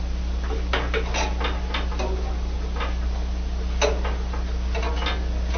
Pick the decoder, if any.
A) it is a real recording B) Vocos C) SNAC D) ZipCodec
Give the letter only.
A